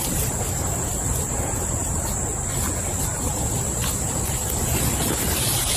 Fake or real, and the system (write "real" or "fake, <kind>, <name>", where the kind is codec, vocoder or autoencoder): real